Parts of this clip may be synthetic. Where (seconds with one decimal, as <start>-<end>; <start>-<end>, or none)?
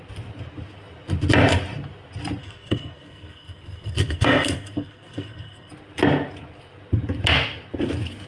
2.4-5.7